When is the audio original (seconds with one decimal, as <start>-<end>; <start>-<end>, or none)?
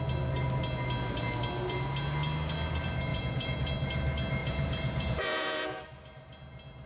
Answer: 0.0-3.1; 3.7-4.4; 5.8-6.9